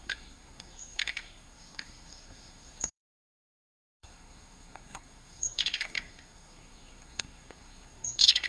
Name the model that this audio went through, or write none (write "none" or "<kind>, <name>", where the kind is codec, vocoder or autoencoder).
codec, SNAC